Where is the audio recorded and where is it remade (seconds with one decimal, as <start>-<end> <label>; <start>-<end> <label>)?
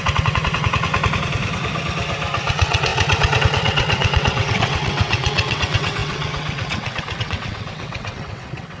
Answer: 0.0-0.9 remade; 0.9-2.5 recorded; 2.5-8.8 remade